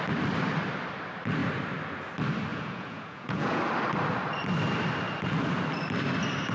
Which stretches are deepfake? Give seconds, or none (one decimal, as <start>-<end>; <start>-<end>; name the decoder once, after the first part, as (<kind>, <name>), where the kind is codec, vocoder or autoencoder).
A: 2.5-3.6 (vocoder, Vocos)

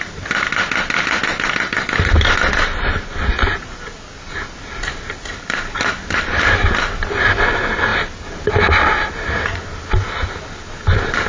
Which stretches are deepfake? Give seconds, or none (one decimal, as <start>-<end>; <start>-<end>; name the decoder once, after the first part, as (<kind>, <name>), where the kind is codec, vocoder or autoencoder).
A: none